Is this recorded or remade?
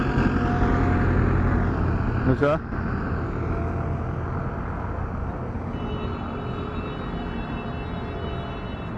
recorded